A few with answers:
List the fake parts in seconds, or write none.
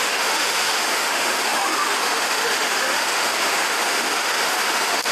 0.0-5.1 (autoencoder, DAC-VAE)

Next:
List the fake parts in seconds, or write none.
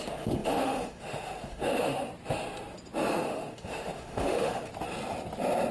0.0-2.1 (autoencoder, DAC-VAE); 3.1-4.7